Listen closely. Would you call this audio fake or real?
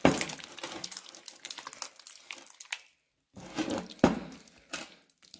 real